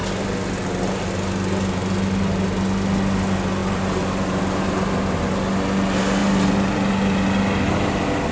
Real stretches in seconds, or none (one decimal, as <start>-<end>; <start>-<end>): 0.0-3.6; 4.6-6.2; 6.9-8.3